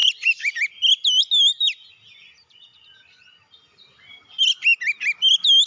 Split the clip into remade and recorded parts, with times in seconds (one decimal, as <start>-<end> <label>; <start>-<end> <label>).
0.0-0.5 remade; 0.5-5.7 recorded